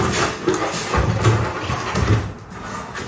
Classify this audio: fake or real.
real